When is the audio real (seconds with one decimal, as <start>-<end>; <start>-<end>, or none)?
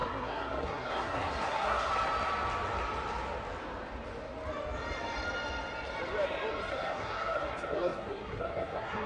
1.9-6.7